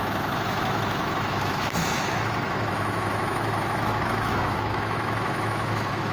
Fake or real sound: fake